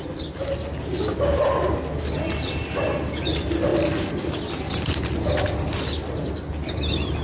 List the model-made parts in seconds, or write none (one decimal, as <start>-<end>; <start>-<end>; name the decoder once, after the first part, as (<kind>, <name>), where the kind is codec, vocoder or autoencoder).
none